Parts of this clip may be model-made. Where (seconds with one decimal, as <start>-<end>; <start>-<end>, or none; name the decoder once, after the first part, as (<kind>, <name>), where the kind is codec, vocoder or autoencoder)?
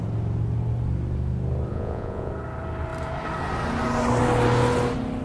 1.7-2.3 (vocoder, Vocos)